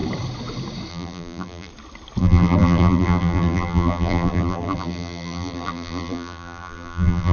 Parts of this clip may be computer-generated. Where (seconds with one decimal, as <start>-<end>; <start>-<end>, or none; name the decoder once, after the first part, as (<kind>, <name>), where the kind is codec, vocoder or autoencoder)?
0.9-1.7 (vocoder, BigVGAN v2); 2.2-7.3

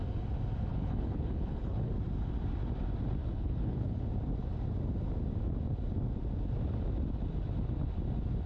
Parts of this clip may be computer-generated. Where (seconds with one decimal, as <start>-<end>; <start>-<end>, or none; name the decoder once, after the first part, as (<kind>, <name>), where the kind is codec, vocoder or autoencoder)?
0.7-1.9 (codec, HILCodec); 3.2-4.0

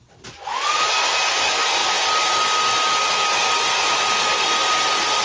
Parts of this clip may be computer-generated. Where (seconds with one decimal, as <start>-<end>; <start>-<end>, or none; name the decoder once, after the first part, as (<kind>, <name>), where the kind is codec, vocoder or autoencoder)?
none

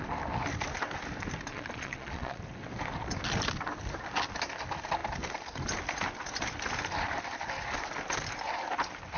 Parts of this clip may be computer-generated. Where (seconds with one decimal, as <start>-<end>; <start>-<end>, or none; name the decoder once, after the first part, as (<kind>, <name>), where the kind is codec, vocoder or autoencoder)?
1.5-2.4 (vocoder, Vocos)